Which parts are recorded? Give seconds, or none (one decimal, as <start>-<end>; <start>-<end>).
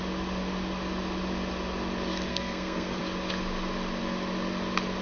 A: 0.0-2.3; 3.0-5.0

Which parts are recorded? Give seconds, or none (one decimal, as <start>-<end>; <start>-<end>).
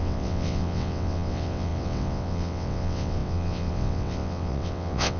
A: none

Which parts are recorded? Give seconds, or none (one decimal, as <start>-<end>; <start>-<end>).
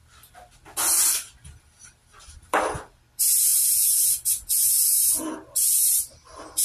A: 0.0-3.5; 4.8-6.6